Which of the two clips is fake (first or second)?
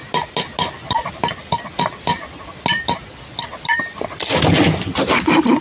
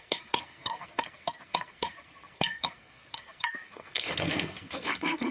second